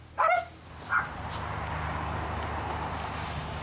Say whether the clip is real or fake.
real